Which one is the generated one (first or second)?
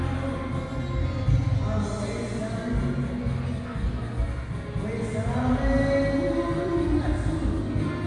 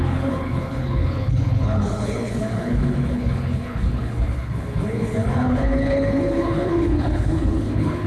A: second